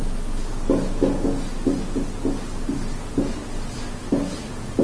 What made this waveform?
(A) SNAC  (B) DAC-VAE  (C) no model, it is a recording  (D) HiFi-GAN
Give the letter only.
C